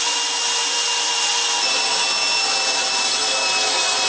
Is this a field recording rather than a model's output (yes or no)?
yes